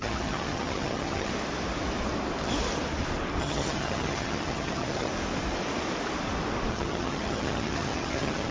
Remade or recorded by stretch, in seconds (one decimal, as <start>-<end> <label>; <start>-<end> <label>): 0.0-1.3 remade; 1.3-3.4 recorded; 3.4-5.1 remade; 5.1-6.7 recorded; 6.7-8.5 remade